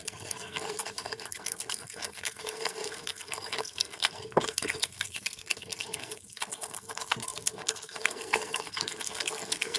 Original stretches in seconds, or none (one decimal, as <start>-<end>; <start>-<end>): none